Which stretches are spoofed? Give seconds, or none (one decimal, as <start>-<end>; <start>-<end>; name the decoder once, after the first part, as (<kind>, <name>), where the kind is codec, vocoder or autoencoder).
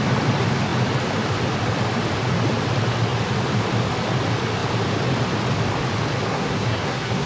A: 6.3-7.3 (codec, SNAC)